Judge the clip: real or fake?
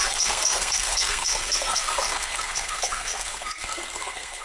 fake